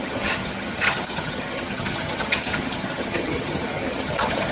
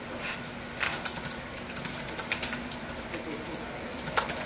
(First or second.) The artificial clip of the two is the first